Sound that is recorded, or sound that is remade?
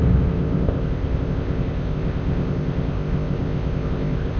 remade